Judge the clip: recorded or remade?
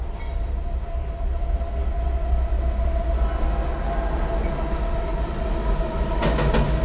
recorded